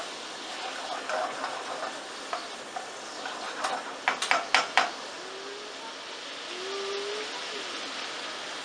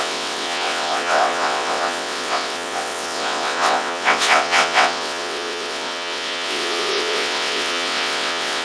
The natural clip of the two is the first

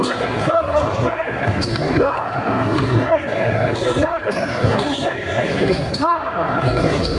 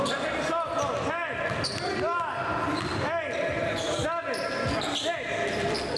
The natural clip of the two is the second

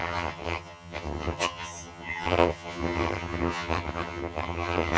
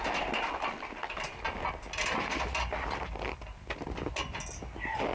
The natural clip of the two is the second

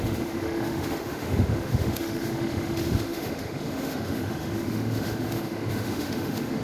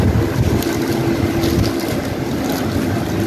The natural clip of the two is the second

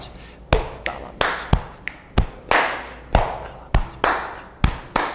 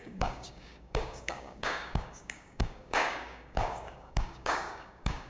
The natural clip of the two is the first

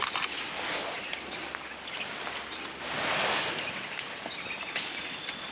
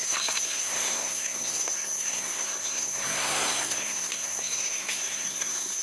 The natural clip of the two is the first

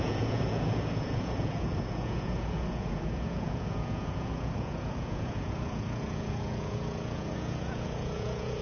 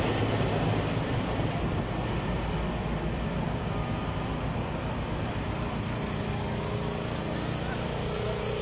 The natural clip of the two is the second